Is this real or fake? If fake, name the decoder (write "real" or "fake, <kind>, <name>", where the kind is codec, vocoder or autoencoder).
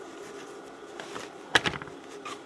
fake, vocoder, BigVGAN v2